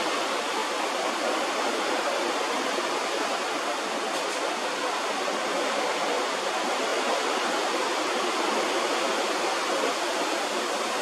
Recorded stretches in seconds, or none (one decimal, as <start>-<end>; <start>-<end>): 0.0-11.0